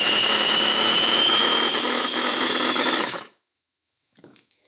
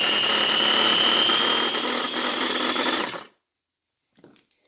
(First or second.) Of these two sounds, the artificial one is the first